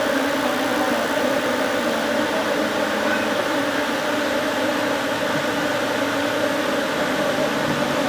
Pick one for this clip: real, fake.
real